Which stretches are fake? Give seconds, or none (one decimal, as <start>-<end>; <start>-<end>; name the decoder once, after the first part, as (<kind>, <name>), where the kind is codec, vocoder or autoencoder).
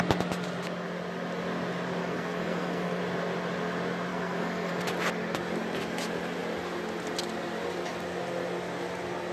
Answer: 2.0-3.0 (codec, SNAC); 4.1-4.7